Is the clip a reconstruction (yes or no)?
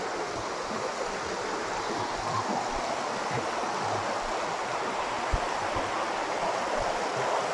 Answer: no